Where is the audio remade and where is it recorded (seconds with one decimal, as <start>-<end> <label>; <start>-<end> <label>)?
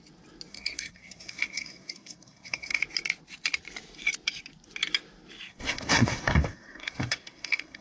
0.0-0.5 recorded; 0.5-2.8 remade; 2.8-5.5 recorded; 5.5-7.8 remade